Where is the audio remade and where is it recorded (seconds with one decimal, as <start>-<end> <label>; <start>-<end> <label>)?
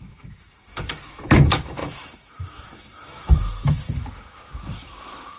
0.0-5.4 remade